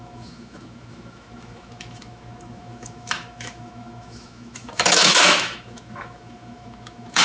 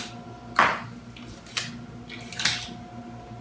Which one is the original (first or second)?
second